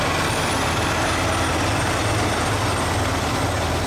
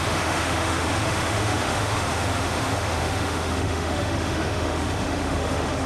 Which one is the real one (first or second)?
first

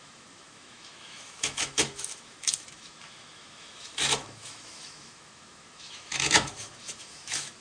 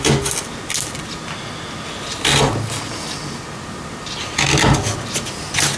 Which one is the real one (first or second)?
second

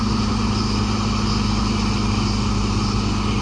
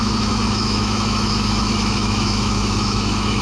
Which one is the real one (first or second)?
first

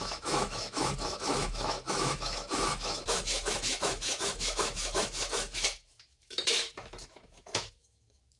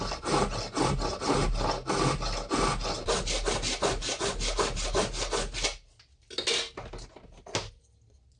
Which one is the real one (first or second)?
second